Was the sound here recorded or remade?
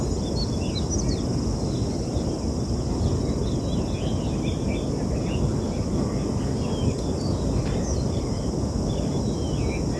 recorded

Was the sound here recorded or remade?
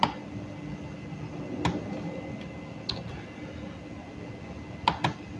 recorded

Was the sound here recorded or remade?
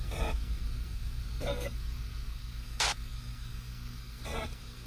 remade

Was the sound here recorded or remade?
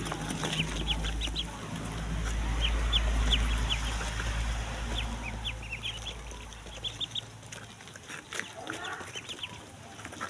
recorded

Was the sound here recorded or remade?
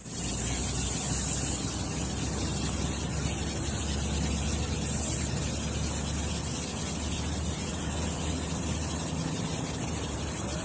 recorded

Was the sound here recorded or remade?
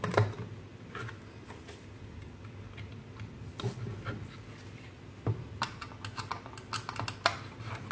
recorded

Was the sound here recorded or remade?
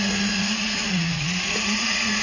remade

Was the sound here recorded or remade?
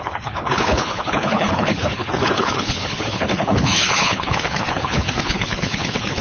remade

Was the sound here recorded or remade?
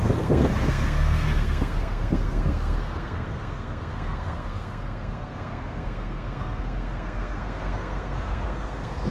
remade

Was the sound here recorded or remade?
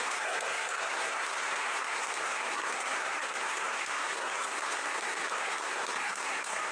remade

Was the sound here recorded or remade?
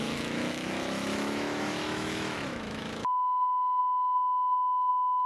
remade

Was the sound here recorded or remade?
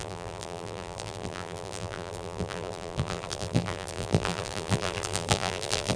remade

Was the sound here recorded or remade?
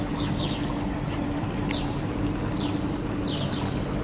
recorded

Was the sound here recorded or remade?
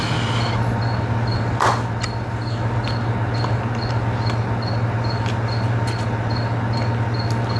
recorded